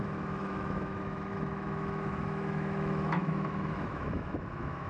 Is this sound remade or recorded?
remade